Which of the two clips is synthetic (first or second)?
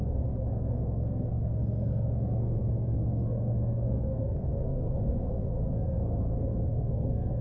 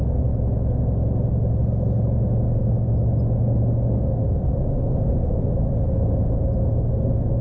first